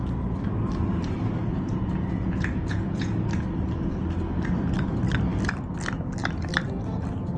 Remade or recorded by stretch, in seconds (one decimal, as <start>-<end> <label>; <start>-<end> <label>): 0.0-1.4 recorded; 1.4-3.1 remade; 3.1-7.4 recorded